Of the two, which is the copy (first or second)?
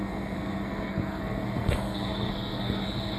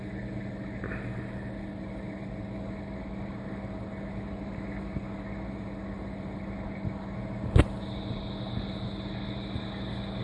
first